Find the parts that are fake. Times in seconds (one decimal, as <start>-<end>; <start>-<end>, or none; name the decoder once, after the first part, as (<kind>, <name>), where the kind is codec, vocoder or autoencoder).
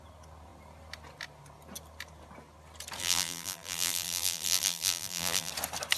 3.0-5.5 (vocoder, BigVGAN v2)